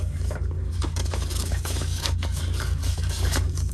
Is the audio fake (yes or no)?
yes